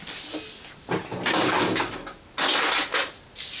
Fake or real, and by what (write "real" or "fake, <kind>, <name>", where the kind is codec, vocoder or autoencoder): real